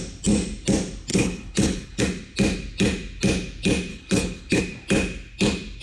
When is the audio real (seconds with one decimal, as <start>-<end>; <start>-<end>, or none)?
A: 0.0-1.1; 2.0-3.9; 4.6-5.8